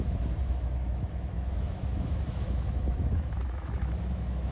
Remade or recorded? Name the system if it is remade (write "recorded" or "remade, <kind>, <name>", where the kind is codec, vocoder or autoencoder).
remade, autoencoder, DAC-VAE